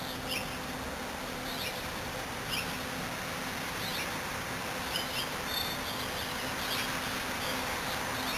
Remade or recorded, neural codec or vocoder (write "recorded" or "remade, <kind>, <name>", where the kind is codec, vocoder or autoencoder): recorded